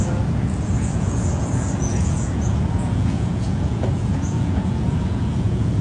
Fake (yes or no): yes